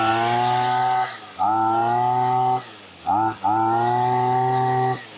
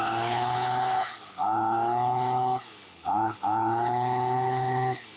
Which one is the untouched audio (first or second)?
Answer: first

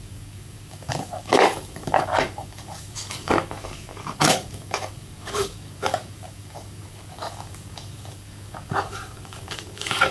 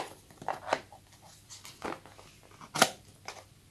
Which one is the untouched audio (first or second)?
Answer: second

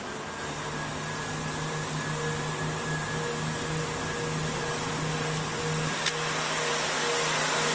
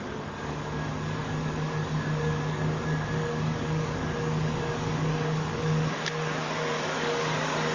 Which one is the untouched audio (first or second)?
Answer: first